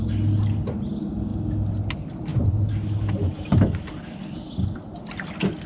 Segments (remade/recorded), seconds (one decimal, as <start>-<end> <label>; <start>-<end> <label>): 0.0-5.7 recorded